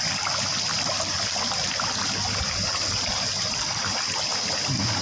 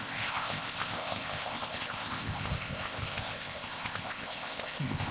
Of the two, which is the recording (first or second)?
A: first